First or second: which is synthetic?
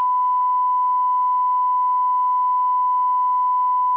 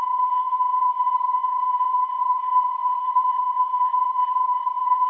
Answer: second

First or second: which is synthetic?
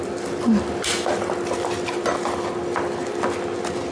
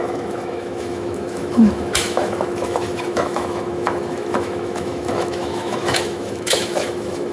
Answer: second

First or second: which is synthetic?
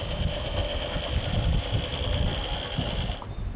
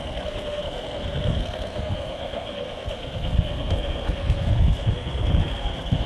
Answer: second